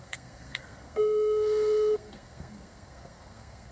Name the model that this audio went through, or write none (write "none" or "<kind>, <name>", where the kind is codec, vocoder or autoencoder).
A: codec, SNAC